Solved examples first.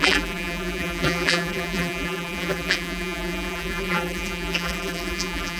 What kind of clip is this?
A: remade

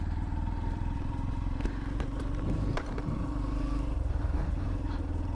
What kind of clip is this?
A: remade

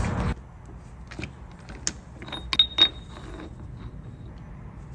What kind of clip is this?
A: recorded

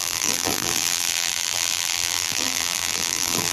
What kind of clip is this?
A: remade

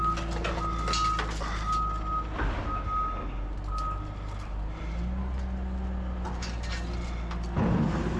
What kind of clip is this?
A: recorded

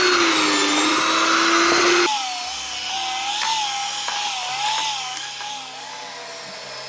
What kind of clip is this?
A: recorded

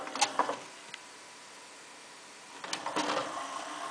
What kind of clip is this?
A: recorded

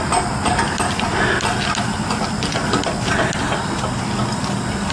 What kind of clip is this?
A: recorded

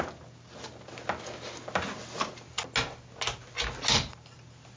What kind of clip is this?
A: recorded